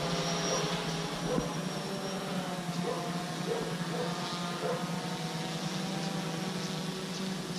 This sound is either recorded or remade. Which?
recorded